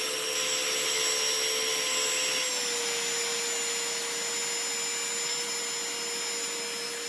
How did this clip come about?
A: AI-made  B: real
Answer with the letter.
B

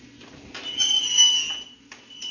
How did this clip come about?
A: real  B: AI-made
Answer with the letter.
A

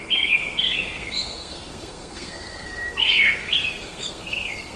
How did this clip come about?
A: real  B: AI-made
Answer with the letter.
B